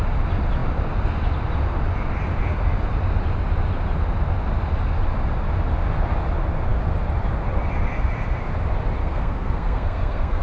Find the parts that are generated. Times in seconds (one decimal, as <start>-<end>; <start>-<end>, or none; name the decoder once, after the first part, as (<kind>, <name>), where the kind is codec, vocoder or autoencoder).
9.0-10.4 (codec, SNAC)

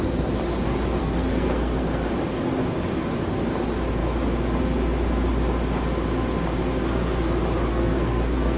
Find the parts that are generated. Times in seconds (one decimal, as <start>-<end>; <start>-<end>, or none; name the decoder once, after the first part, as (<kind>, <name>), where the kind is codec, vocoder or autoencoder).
1.0-2.1 (codec, SNAC); 7.7-8.6

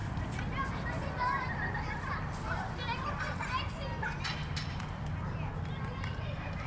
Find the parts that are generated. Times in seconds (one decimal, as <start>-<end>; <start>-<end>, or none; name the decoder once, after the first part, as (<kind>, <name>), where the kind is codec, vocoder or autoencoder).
none

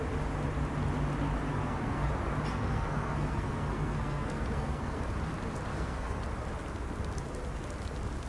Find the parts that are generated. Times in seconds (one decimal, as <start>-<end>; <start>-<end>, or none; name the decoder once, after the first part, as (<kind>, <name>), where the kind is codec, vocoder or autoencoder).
1.5-2.1 (codec, SNAC); 2.5-5.0; 5.7-6.2

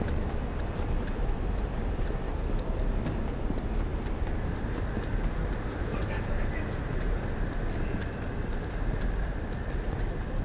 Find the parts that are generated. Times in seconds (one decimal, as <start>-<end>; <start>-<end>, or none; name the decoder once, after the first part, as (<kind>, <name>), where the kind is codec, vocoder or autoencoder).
none

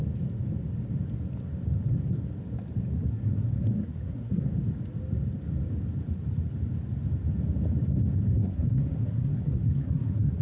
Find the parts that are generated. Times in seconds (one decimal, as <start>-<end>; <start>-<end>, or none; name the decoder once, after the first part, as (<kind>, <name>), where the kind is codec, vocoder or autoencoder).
3.1-4.5 (codec, SNAC); 8.4-10.4

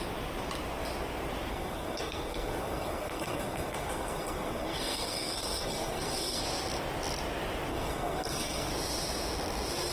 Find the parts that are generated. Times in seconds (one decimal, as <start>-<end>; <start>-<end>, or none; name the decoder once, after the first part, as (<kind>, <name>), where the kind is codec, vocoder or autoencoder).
1.5-6.4 (codec, SNAC); 7.7-8.7